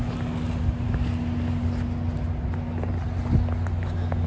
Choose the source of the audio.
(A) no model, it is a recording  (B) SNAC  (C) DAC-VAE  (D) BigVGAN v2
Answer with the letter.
A